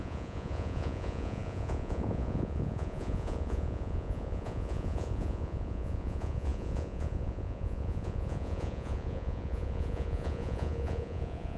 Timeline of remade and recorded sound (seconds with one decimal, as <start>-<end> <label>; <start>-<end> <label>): 0.0-11.6 remade